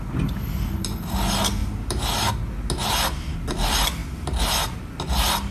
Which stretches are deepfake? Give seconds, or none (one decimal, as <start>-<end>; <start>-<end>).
none